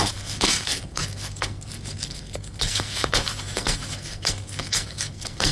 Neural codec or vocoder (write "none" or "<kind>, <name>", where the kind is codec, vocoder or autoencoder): codec, SNAC